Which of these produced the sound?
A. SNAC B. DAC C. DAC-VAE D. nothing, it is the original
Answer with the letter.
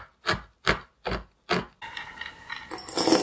D